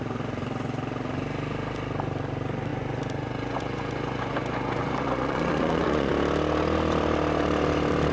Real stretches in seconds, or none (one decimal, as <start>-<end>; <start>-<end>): 0.0-2.7; 6.1-8.1